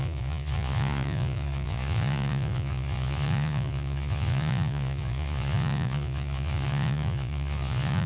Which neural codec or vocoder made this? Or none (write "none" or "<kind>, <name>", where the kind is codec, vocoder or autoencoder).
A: vocoder, Vocos